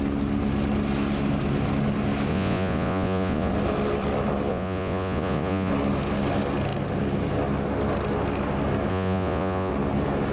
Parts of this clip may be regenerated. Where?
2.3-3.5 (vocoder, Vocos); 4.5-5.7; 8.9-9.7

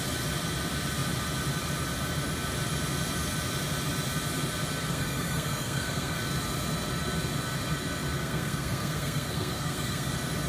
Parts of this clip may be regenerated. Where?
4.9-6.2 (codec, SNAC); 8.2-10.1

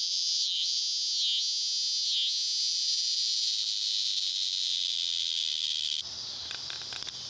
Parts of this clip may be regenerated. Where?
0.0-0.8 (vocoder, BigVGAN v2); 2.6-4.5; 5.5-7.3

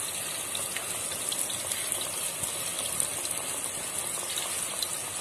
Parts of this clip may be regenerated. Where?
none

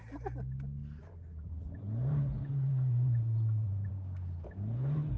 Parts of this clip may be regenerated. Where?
0.8-3.9 (vocoder, BigVGAN v2)

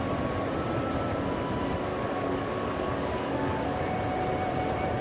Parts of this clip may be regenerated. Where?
1.9-3.9 (codec, DAC)

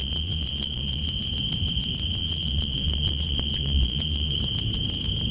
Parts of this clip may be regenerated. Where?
0.0-1.1 (vocoder, Vocos); 2.2-4.4